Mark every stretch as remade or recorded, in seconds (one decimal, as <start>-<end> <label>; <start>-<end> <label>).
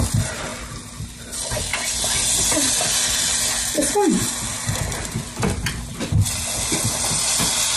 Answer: 0.0-7.8 recorded